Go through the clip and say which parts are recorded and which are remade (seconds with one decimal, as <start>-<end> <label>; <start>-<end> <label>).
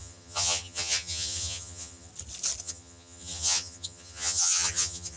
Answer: 0.0-2.1 remade; 2.1-2.6 recorded; 2.6-5.2 remade